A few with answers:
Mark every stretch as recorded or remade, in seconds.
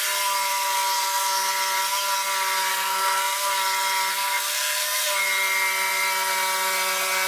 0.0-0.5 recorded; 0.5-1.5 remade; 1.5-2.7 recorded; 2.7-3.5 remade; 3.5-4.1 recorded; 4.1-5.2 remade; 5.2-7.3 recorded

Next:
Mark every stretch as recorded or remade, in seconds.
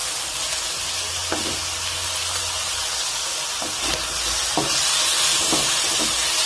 0.0-0.8 remade; 0.8-5.3 recorded; 5.3-6.0 remade; 6.0-6.5 recorded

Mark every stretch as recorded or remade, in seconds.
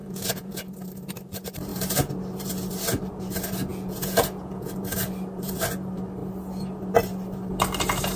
0.0-0.6 remade; 0.6-3.7 recorded; 3.7-4.8 remade; 4.8-8.2 recorded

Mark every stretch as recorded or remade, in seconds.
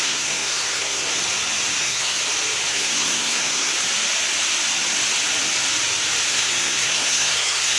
0.0-1.1 remade; 1.1-1.8 recorded; 1.8-2.2 remade; 2.2-2.7 recorded; 2.7-3.7 remade; 3.7-6.3 recorded; 6.3-7.8 remade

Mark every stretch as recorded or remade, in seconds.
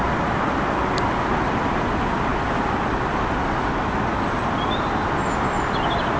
0.0-6.2 recorded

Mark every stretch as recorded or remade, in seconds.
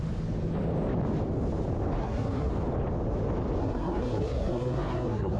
0.0-2.0 recorded; 2.0-2.5 remade; 2.5-3.6 recorded; 3.6-5.4 remade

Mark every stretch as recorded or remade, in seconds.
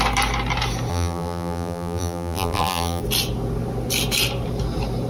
0.0-0.9 recorded; 0.9-3.0 remade; 3.0-5.1 recorded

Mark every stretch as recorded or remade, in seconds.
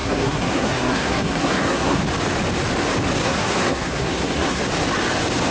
0.0-2.0 remade; 2.0-3.2 recorded; 3.2-4.6 remade; 4.6-5.5 recorded